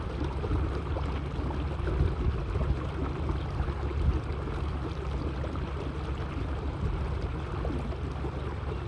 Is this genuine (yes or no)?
yes